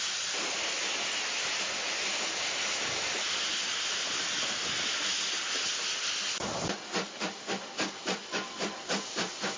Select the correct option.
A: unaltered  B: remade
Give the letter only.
A